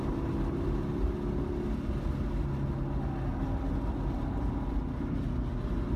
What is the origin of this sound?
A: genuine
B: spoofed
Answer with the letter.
A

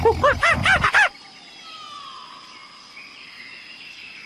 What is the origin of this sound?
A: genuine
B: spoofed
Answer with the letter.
A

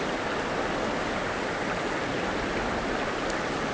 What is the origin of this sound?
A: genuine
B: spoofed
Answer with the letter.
A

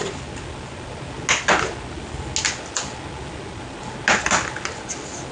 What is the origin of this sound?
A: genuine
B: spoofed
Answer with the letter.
A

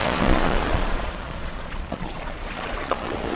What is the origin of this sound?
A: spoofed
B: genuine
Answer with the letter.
A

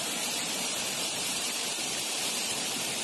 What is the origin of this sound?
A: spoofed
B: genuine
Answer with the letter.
A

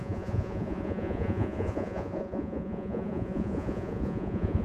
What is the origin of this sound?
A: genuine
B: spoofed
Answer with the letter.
B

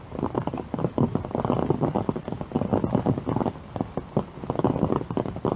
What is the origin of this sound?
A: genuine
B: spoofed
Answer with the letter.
A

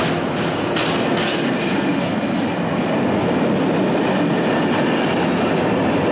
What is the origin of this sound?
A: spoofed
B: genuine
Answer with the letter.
B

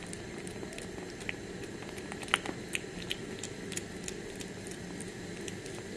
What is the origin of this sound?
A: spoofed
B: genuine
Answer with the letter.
B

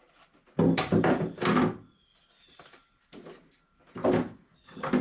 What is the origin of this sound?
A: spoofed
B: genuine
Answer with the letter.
B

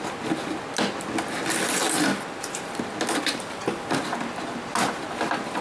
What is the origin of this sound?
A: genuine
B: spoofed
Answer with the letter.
A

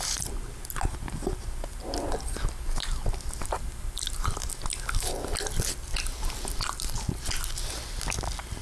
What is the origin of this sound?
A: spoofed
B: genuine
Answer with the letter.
B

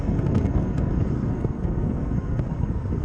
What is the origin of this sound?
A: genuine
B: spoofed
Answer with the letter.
B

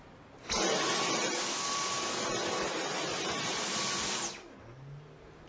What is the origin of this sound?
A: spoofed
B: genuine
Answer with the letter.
B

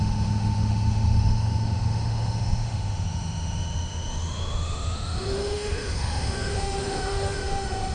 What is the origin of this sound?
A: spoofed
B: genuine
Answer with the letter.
A